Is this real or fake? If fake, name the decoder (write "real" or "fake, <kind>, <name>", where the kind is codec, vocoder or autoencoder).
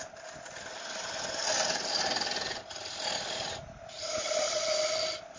real